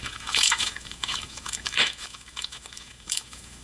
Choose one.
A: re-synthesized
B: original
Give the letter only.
A